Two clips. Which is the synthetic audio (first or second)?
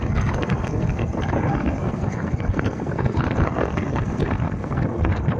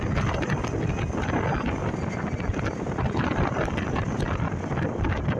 first